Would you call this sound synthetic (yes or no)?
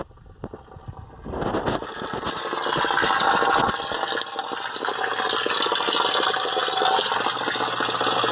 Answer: no